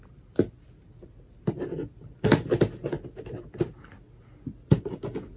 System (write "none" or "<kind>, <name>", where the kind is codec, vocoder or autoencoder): none